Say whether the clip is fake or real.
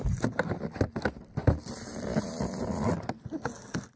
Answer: real